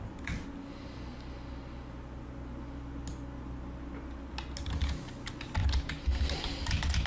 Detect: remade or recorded recorded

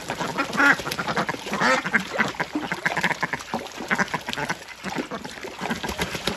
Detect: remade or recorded recorded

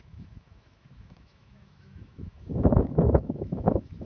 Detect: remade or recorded remade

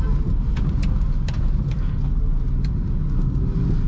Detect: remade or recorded recorded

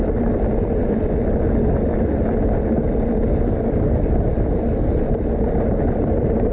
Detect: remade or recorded recorded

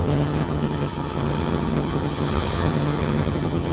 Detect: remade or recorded remade